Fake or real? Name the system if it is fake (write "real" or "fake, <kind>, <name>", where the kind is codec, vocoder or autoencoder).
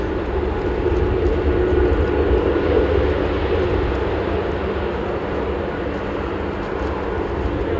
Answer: real